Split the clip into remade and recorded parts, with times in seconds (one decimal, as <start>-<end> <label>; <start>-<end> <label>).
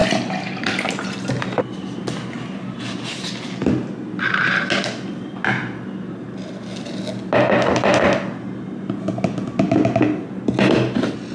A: 0.0-11.3 recorded